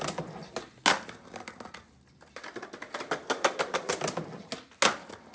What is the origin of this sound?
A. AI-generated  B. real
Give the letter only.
B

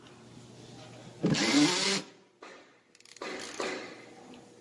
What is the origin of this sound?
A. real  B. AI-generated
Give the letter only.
A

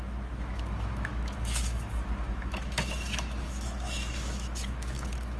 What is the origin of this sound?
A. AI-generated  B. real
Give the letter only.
A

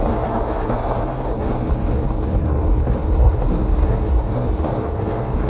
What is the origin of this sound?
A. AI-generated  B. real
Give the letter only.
A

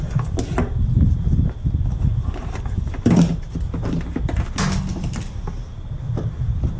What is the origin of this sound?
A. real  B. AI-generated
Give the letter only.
A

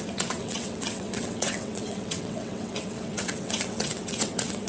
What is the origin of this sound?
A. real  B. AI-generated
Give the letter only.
B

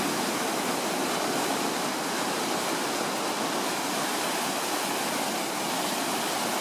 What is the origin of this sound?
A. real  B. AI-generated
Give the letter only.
A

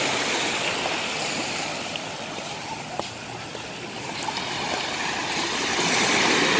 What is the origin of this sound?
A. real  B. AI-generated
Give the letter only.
A